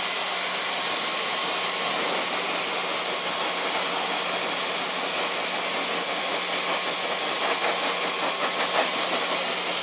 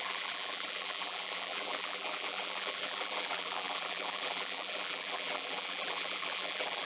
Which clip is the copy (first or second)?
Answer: second